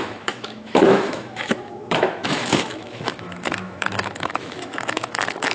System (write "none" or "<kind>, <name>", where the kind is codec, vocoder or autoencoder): autoencoder, DAC-VAE